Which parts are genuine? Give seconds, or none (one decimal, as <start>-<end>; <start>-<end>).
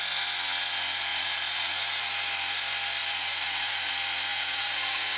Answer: 0.0-1.1; 2.0-3.0; 3.9-4.3